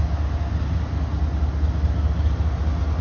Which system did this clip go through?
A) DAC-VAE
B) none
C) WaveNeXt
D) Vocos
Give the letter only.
B